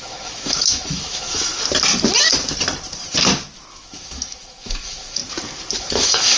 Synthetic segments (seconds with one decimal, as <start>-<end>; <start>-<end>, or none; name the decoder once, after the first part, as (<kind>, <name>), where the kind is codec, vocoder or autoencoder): 0.0-1.5 (autoencoder, DAC-VAE); 3.7-5.2; 5.9-6.4